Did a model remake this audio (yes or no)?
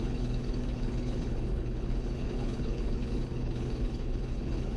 yes